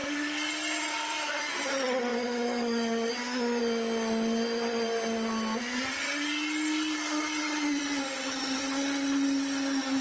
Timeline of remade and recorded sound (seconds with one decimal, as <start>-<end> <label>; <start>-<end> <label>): 0.0-2.1 recorded; 2.1-3.6 remade; 3.6-10.0 recorded